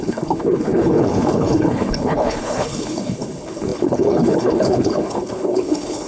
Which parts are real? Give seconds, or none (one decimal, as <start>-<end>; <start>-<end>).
none